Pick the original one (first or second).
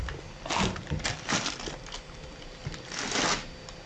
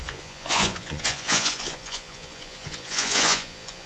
first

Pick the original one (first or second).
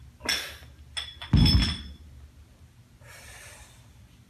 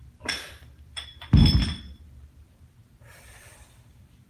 first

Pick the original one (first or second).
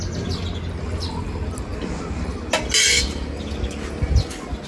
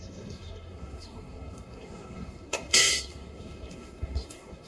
first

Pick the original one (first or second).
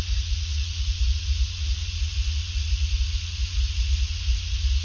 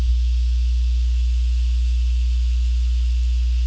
second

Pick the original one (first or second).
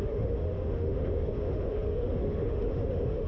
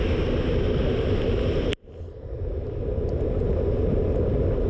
second